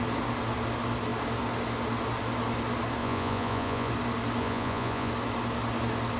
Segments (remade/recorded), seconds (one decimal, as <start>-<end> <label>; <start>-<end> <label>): 0.0-3.0 recorded; 3.0-3.9 remade; 3.9-4.4 recorded; 4.4-5.1 remade; 5.1-6.2 recorded